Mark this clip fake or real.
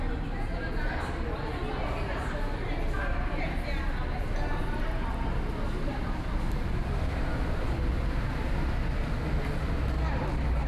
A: real